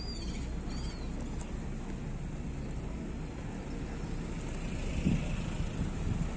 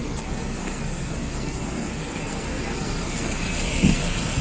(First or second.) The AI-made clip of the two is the second